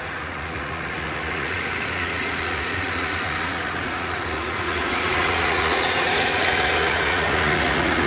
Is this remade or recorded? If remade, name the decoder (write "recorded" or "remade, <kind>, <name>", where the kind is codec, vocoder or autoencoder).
remade, vocoder, Vocos